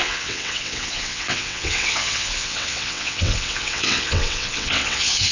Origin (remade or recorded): remade